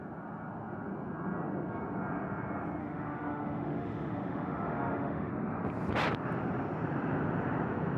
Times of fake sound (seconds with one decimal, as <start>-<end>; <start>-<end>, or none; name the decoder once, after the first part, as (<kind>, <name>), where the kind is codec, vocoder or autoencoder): 2.8-5.3 (autoencoder, DAC-VAE)